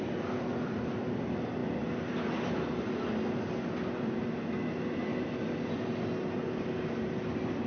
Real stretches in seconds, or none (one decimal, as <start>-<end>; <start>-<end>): 0.0-7.7